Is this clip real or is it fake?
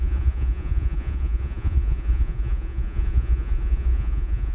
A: fake